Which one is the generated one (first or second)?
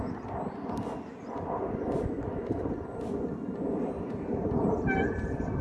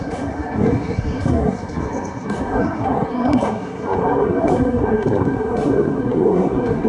second